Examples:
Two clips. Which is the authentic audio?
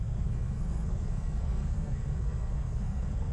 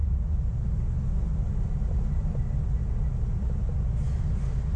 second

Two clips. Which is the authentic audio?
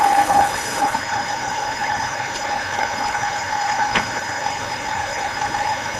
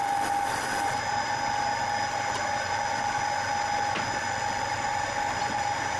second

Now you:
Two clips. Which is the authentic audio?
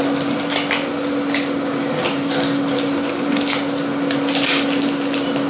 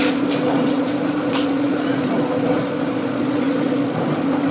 first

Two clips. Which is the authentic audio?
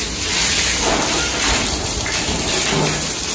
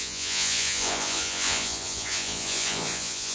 first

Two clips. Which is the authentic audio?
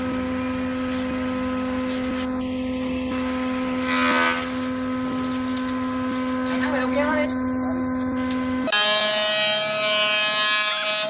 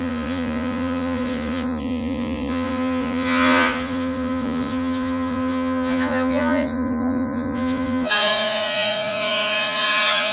first